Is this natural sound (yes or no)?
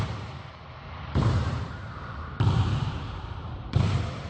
no